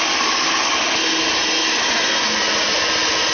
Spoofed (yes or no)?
no